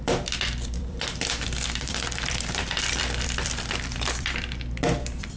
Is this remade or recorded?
remade